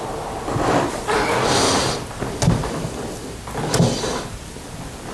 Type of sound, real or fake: real